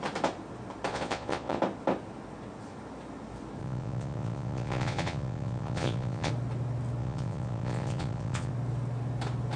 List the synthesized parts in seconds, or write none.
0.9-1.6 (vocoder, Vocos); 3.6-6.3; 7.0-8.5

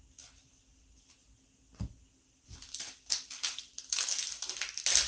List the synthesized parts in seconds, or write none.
none

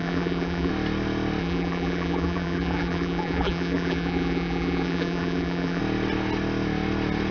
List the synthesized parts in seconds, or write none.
0.0-0.7 (vocoder, BigVGAN v2); 1.4-5.8

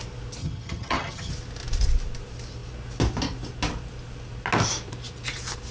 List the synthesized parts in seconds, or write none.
0.4-1.3 (vocoder, HiFi-GAN)

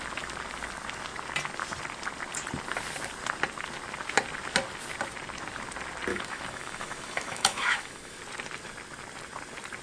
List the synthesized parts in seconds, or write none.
6.1-8.2 (autoencoder, DAC-VAE)

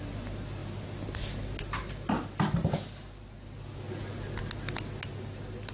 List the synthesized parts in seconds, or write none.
none